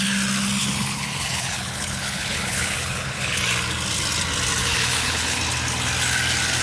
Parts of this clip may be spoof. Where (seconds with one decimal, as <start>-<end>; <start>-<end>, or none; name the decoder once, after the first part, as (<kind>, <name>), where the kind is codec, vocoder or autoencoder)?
0.6-3.4 (codec, HILCodec); 4.6-5.4

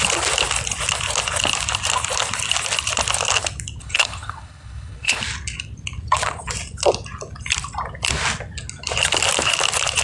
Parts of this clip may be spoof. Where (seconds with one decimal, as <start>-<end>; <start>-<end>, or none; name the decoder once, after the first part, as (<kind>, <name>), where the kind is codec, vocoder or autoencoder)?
3.8-5.2 (codec, HILCodec)

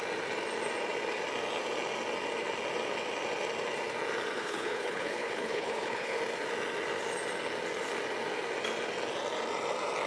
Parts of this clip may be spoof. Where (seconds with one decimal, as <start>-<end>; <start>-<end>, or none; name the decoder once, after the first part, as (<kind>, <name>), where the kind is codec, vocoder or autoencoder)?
4.4-6.2 (codec, HILCodec)

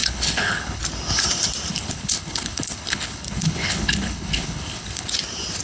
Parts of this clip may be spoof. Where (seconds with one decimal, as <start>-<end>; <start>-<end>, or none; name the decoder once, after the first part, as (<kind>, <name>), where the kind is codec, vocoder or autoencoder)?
0.0-0.8 (codec, HILCodec); 1.7-5.1

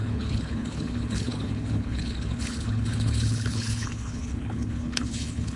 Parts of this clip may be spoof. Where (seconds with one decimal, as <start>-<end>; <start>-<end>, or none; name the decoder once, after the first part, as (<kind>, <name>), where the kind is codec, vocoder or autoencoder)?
0.0-5.6 (codec, HILCodec)

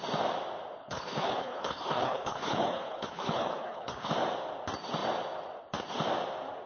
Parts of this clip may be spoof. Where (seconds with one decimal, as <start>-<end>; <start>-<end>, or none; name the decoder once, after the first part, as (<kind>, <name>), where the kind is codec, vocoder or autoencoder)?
0.8-4.1 (codec, HILCodec)

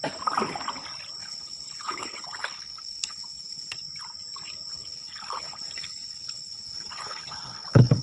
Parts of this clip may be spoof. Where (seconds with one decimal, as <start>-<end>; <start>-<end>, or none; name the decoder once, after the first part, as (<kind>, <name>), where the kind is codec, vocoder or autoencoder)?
1.2-3.7 (codec, HILCodec); 4.7-8.0